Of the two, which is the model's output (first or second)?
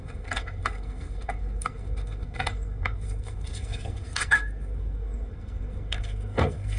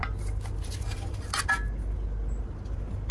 first